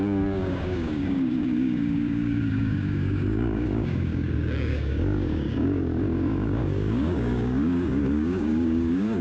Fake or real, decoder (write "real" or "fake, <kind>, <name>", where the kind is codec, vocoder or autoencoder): fake, codec, DAC